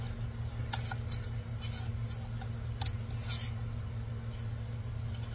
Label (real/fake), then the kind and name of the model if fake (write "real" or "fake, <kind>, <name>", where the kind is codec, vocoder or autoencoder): real